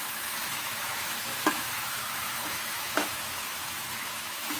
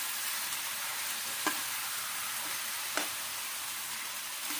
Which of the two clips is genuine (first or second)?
second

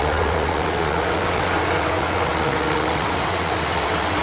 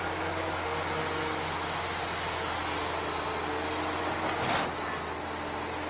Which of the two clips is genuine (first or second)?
second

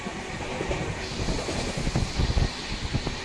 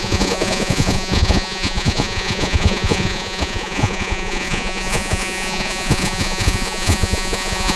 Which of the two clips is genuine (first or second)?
first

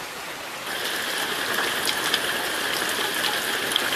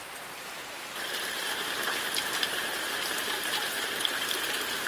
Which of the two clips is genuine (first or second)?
first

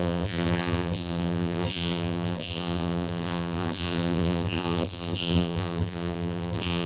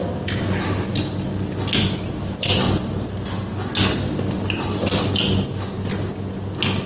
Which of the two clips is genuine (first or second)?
second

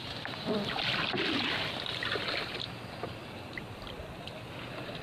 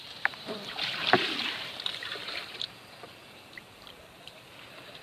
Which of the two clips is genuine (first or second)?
first